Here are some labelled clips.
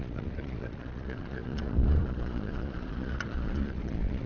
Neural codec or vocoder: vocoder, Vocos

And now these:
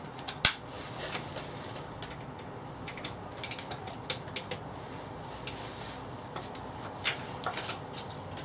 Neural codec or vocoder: none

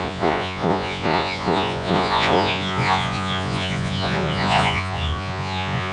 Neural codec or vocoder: vocoder, Vocos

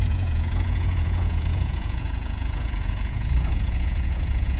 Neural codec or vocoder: vocoder, Vocos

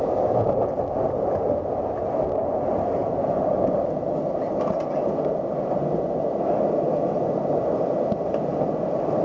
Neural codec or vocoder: none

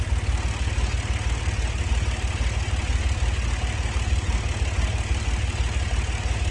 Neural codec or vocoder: none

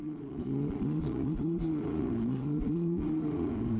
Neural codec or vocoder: vocoder, Vocos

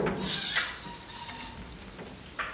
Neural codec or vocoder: none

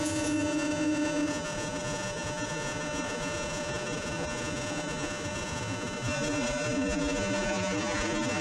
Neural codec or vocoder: vocoder, Vocos